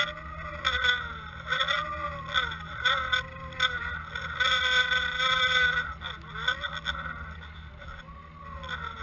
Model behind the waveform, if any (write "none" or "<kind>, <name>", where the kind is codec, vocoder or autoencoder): none